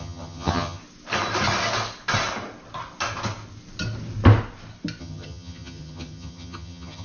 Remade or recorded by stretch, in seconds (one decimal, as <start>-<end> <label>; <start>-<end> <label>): 0.0-0.8 remade; 0.8-5.0 recorded; 5.0-7.0 remade